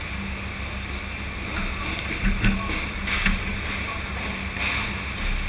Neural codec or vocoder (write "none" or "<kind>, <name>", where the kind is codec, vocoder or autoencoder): none